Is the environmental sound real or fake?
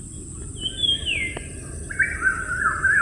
real